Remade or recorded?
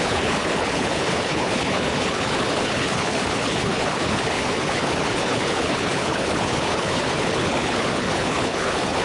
remade